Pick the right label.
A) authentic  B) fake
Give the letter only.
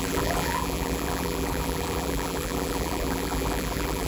B